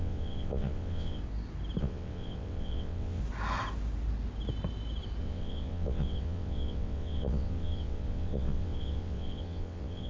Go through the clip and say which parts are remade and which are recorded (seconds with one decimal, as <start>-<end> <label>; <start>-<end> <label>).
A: 0.0-1.2 remade; 1.2-1.8 recorded; 1.8-3.2 remade; 3.2-5.2 recorded; 5.2-10.1 remade